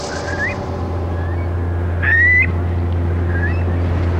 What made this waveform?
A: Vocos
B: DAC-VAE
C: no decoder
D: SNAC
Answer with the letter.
C